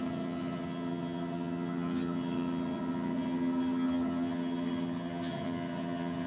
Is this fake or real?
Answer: fake